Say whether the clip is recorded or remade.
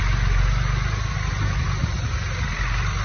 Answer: recorded